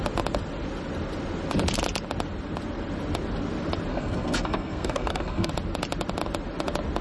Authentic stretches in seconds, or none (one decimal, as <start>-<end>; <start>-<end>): 0.0-3.9; 5.5-7.0